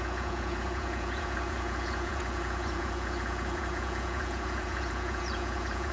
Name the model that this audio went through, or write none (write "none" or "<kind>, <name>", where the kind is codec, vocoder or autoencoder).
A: vocoder, Vocos